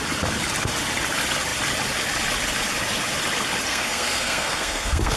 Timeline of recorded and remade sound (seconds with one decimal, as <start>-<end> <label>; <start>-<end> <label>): 0.0-3.7 recorded; 3.7-5.2 remade